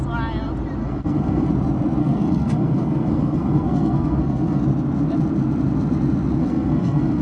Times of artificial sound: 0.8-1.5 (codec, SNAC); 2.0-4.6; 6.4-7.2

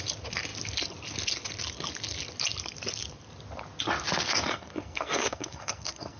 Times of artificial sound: 4.2-6.2 (codec, SNAC)

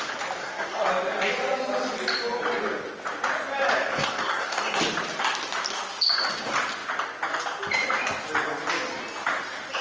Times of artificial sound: 0.4-0.9 (codec, SNAC); 3.9-4.8

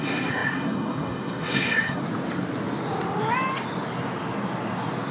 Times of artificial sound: 0.0-2.0 (codec, SNAC)

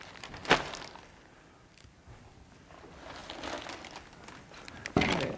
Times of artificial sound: none

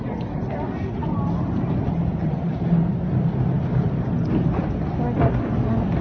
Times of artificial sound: none

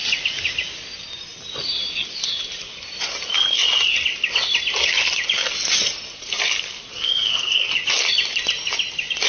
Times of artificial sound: 6.9-7.7 (codec, SNAC)